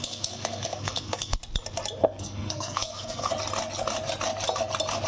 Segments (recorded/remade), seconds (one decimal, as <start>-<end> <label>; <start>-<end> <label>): 0.0-1.4 remade; 1.4-2.0 recorded; 2.0-3.3 remade; 3.3-5.1 recorded